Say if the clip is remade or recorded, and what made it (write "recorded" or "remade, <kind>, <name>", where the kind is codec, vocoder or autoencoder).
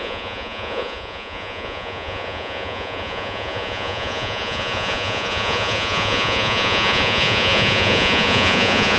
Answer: remade, vocoder, Vocos